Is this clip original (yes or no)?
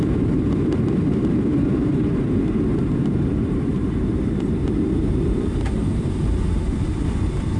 no